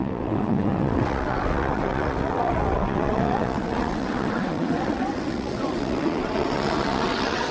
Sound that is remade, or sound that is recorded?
remade